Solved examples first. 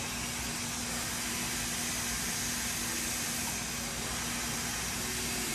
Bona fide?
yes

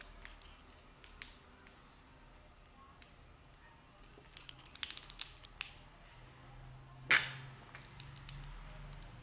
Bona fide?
yes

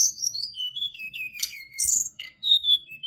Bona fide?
no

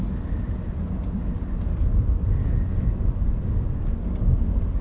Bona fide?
yes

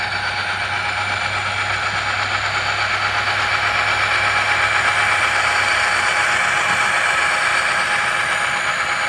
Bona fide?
yes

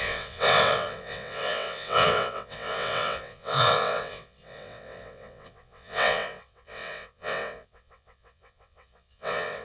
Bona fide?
no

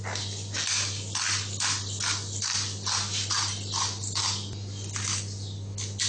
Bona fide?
yes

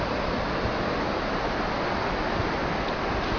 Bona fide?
yes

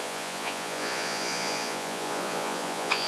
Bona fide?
no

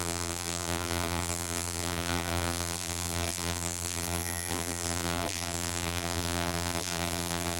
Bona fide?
no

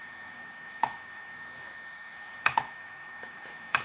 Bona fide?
no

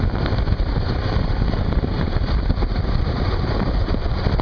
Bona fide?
no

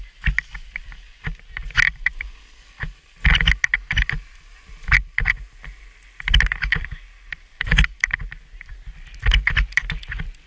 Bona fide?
yes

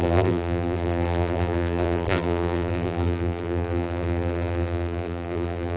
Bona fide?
no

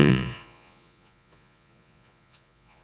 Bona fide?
no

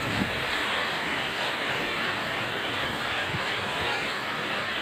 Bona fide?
no